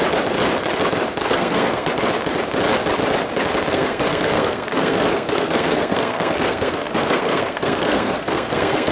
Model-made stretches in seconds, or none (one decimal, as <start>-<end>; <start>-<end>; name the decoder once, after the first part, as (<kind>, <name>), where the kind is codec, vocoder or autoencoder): 1.2-1.9 (codec, SNAC); 3.7-8.9